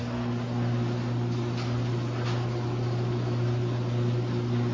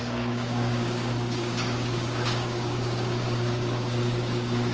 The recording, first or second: first